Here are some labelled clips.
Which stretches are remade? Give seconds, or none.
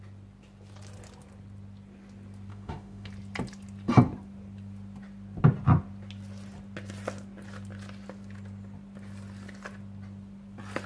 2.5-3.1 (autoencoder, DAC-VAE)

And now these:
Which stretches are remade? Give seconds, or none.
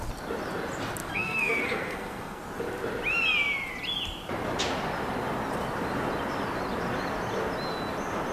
1.0-2.4 (codec, SNAC)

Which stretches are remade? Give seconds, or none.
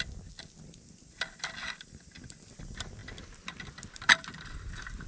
none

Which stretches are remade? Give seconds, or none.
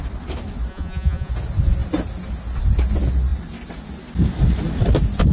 0.7-1.3 (vocoder, Vocos)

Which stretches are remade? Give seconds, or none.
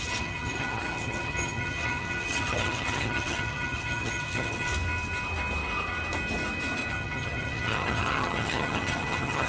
0.0-4.7 (vocoder, HiFi-GAN); 6.9-9.5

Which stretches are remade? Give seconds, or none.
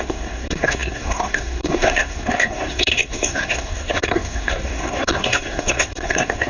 0.0-6.5 (codec, SNAC)